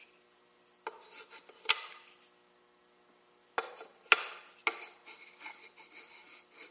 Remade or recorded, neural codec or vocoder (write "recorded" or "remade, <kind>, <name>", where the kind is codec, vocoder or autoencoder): recorded